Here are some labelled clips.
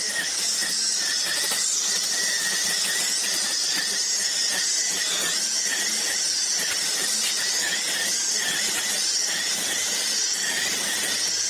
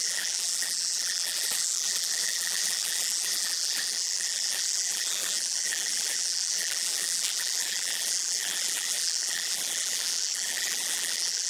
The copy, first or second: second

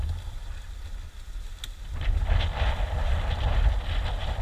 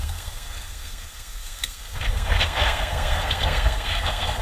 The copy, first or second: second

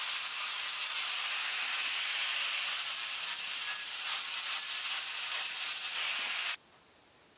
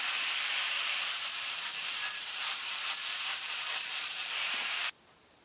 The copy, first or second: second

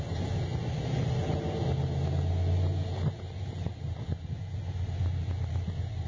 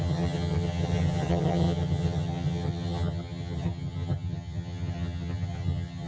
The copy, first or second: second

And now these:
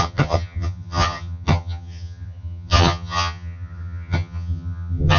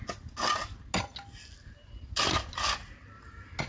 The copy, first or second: first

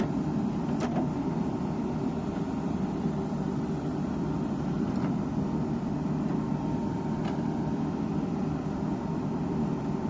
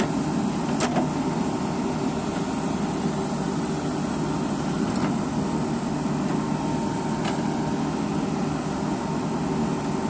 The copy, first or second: first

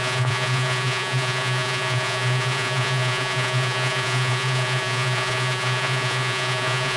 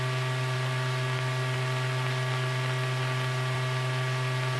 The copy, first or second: first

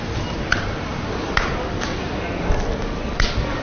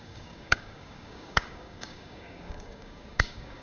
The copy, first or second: second